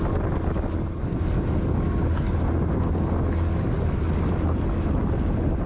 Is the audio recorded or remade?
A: recorded